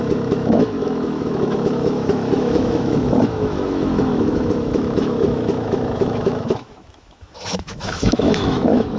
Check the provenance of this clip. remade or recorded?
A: remade